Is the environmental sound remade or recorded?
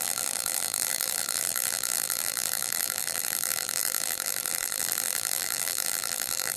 remade